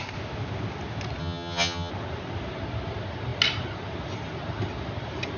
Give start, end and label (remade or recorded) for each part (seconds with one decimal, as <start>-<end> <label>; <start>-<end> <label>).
0.0-1.2 recorded; 1.2-1.9 remade; 1.9-5.4 recorded